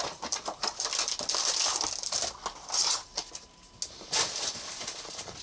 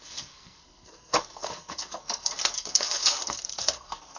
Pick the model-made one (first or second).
second